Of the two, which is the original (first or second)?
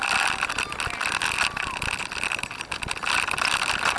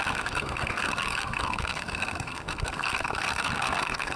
first